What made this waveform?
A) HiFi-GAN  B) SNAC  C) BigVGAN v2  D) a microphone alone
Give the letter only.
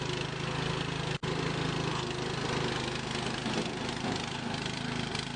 D